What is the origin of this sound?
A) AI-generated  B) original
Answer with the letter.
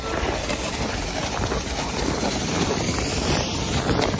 A